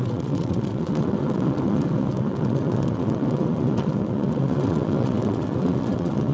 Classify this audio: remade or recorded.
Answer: remade